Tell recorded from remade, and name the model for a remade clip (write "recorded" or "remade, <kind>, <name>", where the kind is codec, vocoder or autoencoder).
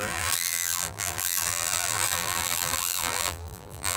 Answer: remade, vocoder, BigVGAN v2